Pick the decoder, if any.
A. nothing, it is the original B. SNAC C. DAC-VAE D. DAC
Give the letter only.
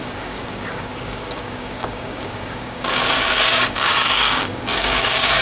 D